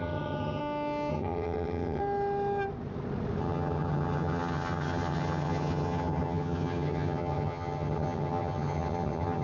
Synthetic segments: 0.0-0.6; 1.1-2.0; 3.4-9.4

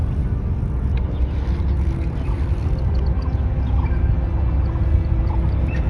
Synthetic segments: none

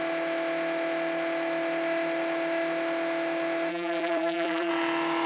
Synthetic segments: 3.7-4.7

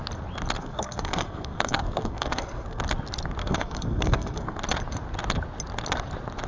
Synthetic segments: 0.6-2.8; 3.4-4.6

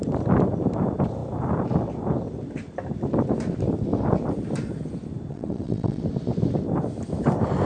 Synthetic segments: 5.3-6.0